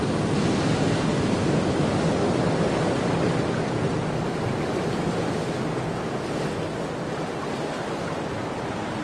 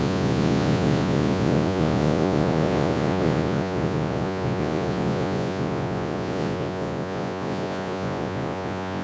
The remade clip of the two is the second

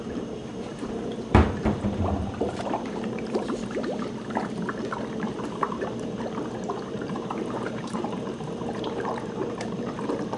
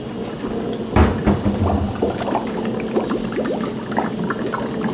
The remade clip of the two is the first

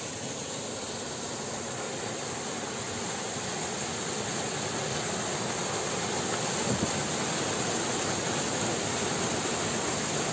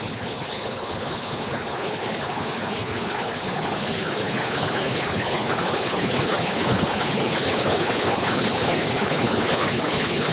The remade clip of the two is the second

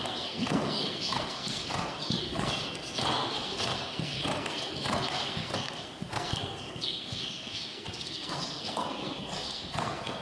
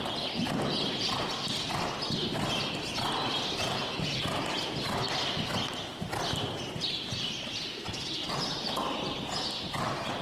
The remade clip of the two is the first